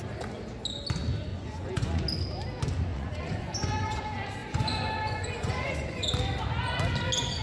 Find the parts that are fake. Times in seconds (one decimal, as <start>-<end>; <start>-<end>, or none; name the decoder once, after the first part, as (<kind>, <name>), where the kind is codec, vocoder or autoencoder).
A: 1.3-2.0 (vocoder, Vocos); 2.9-4.0; 4.4-6.1